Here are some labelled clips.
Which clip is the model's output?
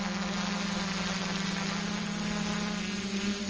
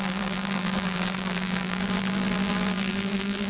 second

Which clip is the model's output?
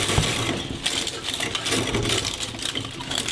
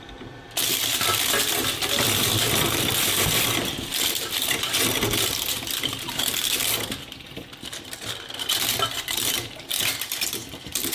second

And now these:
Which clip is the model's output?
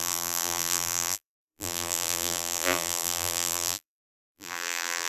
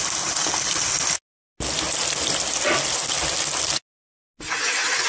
first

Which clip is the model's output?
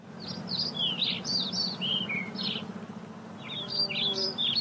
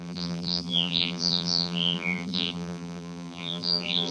second